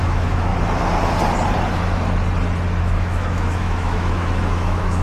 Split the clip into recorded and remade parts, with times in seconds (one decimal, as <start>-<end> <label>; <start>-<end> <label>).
0.0-0.5 remade; 0.5-2.8 recorded; 2.8-5.0 remade